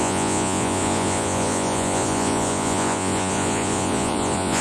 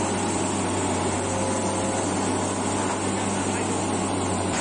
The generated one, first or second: first